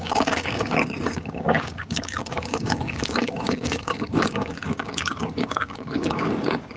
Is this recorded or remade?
remade